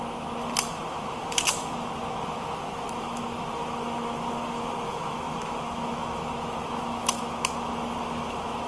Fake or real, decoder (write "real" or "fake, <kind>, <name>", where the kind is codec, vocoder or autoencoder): fake, autoencoder, DAC-VAE